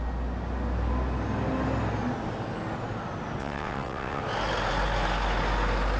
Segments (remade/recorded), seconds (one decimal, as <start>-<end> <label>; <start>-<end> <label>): 0.0-3.4 recorded; 3.4-4.2 remade; 4.2-6.0 recorded